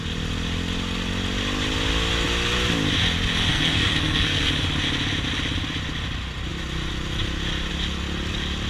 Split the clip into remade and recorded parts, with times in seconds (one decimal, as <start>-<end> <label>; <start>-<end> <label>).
0.0-3.5 recorded; 3.5-4.5 remade; 4.5-8.7 recorded